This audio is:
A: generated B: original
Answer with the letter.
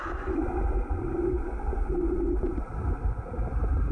B